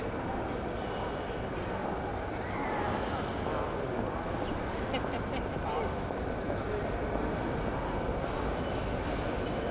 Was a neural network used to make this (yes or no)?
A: no